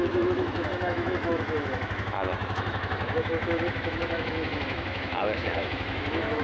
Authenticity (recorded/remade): remade